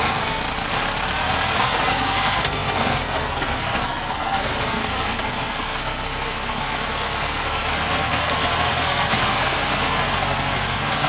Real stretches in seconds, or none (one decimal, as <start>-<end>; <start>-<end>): 0.4-1.6